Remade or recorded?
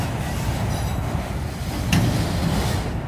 recorded